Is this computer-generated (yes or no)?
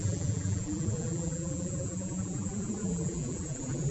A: yes